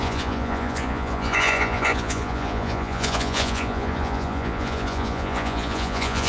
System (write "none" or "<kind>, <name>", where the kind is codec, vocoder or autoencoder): vocoder, Vocos